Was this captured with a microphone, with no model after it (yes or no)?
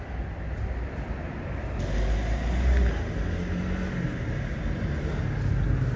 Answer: yes